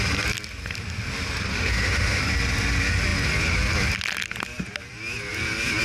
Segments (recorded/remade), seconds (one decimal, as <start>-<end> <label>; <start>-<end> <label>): 0.0-1.5 recorded; 1.5-2.2 remade; 2.2-5.8 recorded

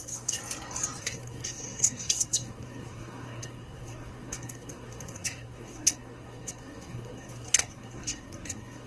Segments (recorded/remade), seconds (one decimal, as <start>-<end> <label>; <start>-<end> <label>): 0.0-0.4 remade; 0.4-1.0 recorded; 1.0-8.9 remade

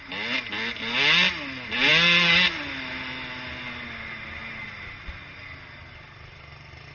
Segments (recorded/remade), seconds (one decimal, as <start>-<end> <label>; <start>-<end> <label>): 0.0-6.9 recorded

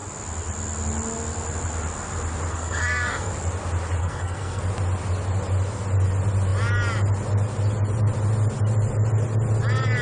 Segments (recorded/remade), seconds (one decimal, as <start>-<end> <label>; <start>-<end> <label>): 0.0-2.5 recorded; 2.5-3.3 remade; 3.3-4.0 recorded; 4.0-4.6 remade; 4.6-10.0 recorded